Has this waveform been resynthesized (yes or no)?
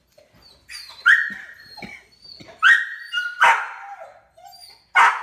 no